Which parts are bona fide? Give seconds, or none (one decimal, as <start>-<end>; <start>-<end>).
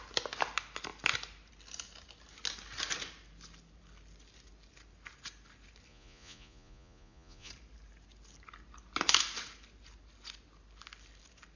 0.0-5.9; 7.5-11.6